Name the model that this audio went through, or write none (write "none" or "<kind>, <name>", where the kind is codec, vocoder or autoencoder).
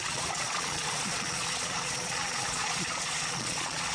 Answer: vocoder, Vocos